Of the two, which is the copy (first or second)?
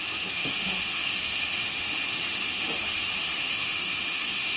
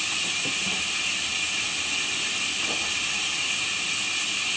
first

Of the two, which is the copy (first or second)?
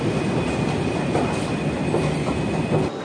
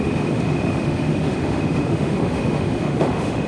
second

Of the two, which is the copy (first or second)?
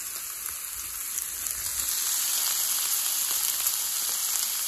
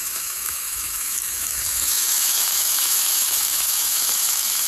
second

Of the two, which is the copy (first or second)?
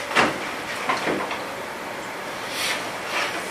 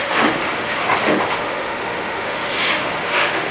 second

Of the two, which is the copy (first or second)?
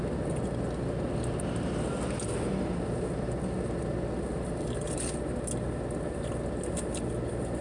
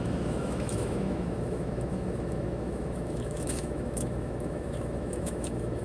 second